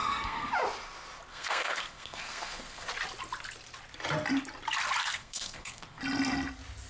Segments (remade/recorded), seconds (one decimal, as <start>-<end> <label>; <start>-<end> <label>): 0.0-0.5 remade; 0.5-1.3 recorded; 1.3-2.9 remade; 2.9-5.0 recorded; 5.0-6.0 remade; 6.0-6.9 recorded